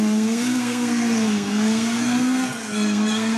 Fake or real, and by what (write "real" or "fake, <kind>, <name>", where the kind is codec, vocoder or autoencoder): fake, codec, SNAC